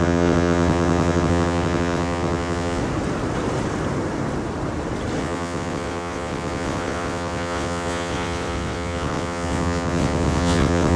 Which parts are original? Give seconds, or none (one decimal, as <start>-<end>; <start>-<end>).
2.8-5.2